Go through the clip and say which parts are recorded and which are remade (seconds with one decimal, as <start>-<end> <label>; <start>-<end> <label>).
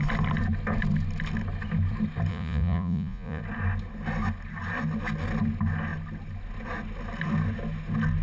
0.0-2.3 recorded; 2.3-3.4 remade; 3.4-8.2 recorded